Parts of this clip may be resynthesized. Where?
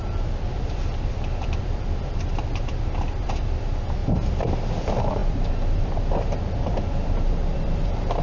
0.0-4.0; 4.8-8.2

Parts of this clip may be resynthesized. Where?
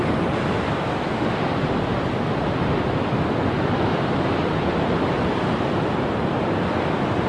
3.9-5.2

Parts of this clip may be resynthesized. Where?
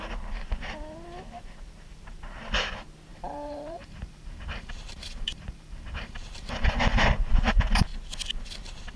3.1-7.3